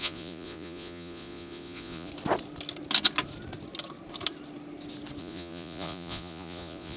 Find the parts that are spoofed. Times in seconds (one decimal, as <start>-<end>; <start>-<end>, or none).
0.0-2.1; 5.2-7.0